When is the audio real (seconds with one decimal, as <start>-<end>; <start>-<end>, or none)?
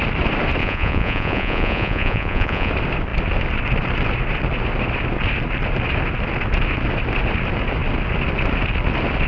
0.0-0.6; 2.7-9.3